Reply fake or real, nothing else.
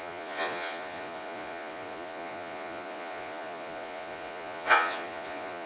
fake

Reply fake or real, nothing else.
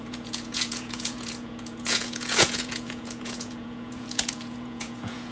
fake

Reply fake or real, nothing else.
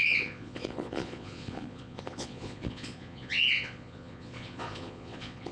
fake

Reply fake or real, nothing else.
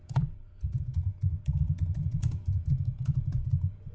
fake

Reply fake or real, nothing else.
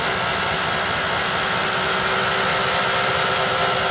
real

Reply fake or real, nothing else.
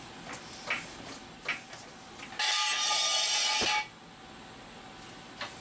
real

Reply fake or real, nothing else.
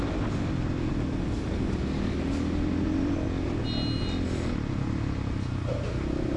real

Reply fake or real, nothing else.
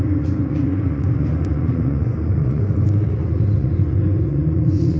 fake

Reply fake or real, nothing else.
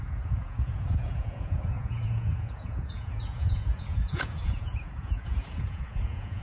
fake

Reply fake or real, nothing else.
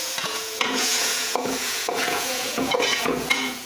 fake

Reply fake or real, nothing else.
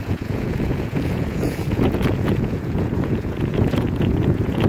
fake